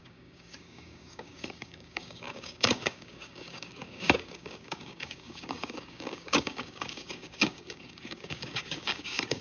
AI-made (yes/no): yes